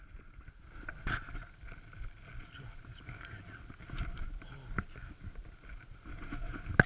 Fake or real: real